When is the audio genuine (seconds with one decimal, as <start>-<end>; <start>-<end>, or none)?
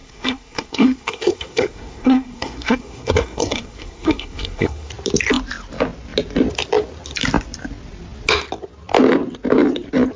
4.9-10.2